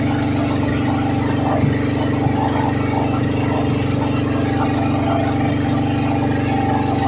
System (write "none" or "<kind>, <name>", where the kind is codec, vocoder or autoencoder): none